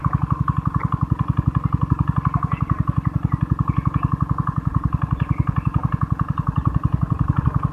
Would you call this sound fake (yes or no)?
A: no